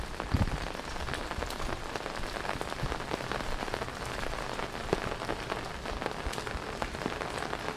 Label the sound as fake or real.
real